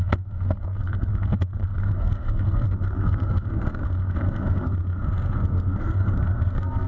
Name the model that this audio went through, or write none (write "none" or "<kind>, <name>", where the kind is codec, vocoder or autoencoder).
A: codec, SNAC